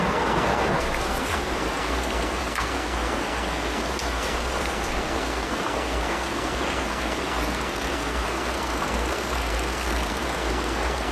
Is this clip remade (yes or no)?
yes